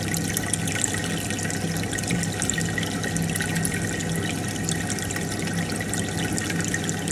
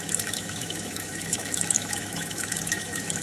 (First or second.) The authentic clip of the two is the first